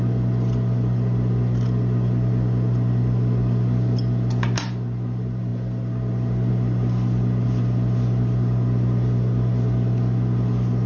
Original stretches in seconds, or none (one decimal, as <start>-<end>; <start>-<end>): 0.0-10.9